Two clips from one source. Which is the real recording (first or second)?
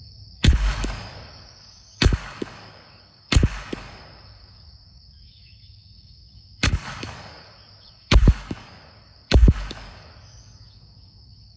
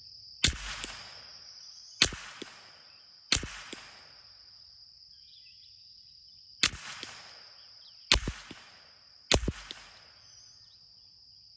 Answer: second